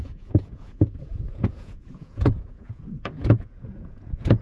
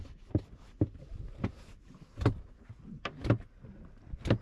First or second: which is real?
second